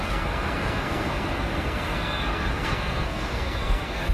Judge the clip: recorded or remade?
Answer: remade